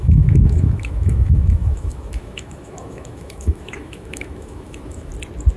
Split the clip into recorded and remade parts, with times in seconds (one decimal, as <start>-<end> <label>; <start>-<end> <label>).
0.0-5.1 remade; 5.1-5.6 recorded